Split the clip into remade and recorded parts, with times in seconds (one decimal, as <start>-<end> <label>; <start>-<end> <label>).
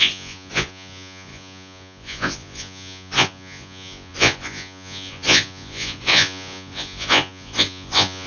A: 0.0-8.3 remade